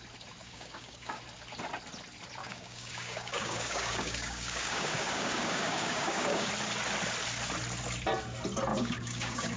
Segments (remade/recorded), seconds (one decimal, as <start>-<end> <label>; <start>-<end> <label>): 0.0-0.4 recorded; 0.4-1.2 remade; 1.2-2.4 recorded; 2.4-6.5 remade; 6.5-8.7 recorded; 8.7-9.6 remade